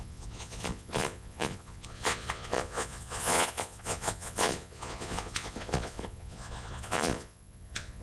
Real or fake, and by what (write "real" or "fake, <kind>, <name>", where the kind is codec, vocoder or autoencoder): fake, vocoder, Vocos